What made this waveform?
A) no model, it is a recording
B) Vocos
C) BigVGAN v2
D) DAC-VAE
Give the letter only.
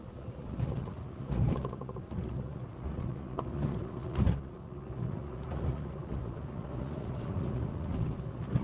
B